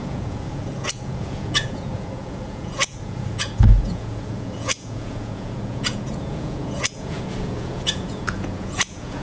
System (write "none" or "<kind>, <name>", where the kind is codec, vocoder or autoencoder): vocoder, Vocos